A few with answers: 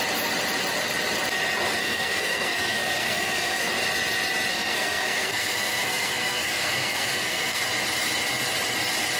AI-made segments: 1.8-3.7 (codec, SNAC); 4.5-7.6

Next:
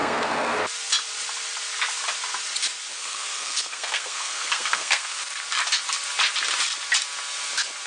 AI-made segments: 0.0-0.6 (codec, SNAC); 2.9-5.2

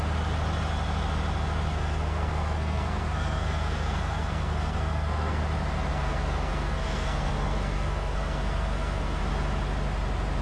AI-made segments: 1.7-5.4 (codec, SNAC); 5.9-9.2

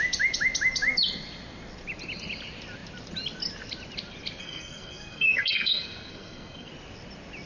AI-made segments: 4.4-6.7 (codec, SNAC)

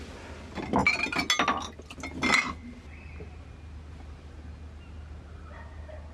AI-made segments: none